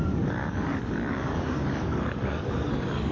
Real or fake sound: fake